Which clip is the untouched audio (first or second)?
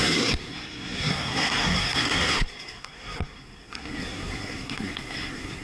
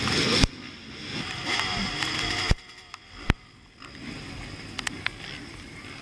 second